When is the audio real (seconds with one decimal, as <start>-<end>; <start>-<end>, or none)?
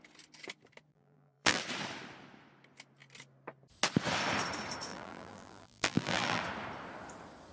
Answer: 0.0-0.9; 1.6-4.9; 6.4-7.5